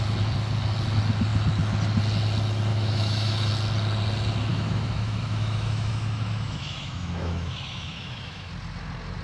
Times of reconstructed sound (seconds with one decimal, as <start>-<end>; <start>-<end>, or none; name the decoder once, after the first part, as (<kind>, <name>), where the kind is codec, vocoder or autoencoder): 2.7-3.5 (autoencoder, DAC-VAE); 4.5-8.5